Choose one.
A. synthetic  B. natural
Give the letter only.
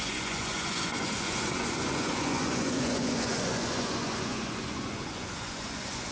A